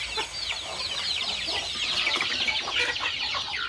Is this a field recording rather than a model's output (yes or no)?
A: yes